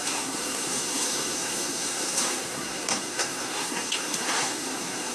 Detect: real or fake fake